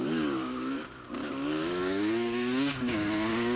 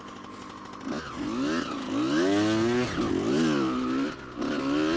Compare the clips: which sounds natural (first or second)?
second